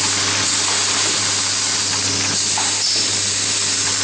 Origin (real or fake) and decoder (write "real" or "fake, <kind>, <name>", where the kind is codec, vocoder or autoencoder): real